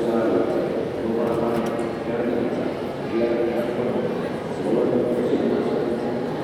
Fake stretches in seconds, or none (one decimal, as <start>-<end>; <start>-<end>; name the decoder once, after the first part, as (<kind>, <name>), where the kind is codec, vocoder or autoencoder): none